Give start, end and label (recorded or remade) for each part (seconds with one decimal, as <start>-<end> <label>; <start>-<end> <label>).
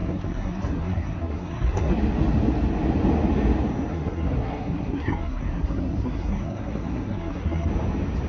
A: 0.0-2.0 remade; 2.0-3.9 recorded; 3.9-7.7 remade; 7.7-8.3 recorded